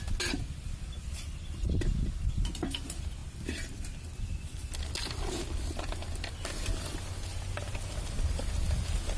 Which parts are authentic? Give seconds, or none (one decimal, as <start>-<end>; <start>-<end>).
0.0-9.2